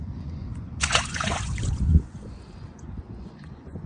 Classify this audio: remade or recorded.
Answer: remade